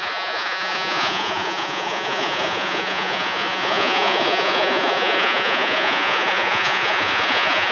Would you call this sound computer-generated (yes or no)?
yes